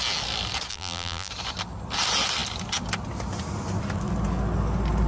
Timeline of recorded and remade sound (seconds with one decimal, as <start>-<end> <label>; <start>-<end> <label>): 0.0-0.7 recorded; 0.7-1.3 remade; 1.3-5.1 recorded